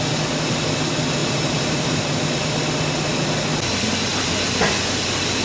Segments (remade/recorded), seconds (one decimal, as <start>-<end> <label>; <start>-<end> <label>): 0.0-1.2 recorded; 1.2-2.0 remade; 2.0-5.4 recorded